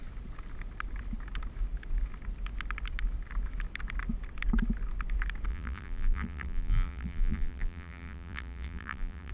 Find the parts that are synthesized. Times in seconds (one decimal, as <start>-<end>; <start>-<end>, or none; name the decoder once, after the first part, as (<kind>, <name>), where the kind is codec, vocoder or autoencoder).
5.5-9.3 (vocoder, BigVGAN v2)